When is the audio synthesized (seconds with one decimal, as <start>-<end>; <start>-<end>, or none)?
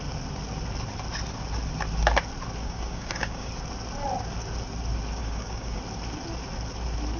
2.6-3.5; 5.2-5.8